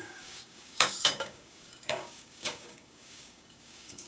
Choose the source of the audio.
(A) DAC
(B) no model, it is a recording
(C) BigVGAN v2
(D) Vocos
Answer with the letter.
A